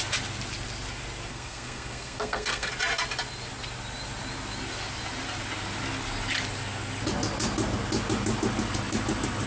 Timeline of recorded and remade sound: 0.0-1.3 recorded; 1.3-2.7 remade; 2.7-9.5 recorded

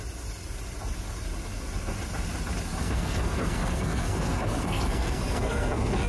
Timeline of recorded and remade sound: 0.0-2.8 recorded; 2.8-6.1 remade

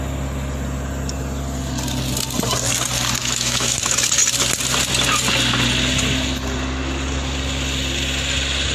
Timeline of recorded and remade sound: 0.0-3.2 recorded; 3.2-4.1 remade; 4.1-8.7 recorded

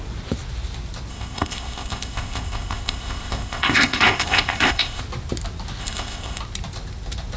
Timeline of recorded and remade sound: 0.0-1.1 recorded; 1.1-5.0 remade; 5.0-5.8 recorded; 5.8-6.4 remade; 6.4-7.4 recorded

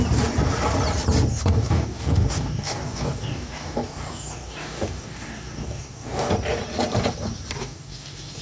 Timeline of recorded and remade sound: 0.0-1.3 recorded; 1.3-6.3 remade; 6.3-7.6 recorded; 7.6-8.4 remade

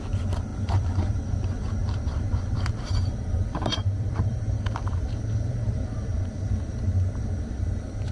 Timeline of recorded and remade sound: 0.0-0.5 recorded; 0.5-1.2 remade; 1.2-1.8 recorded; 1.8-6.5 remade; 6.5-8.1 recorded

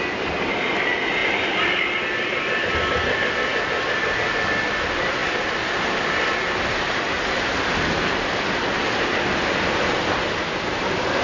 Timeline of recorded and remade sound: 0.0-11.2 recorded

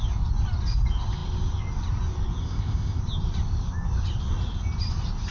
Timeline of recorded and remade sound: 0.0-2.4 recorded; 2.4-3.0 remade; 3.0-5.3 recorded